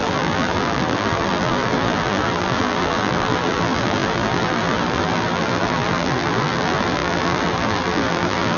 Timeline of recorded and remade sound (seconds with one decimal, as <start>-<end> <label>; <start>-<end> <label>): 0.0-8.6 remade